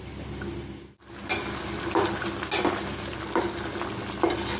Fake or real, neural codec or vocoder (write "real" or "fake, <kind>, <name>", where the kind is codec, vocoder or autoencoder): real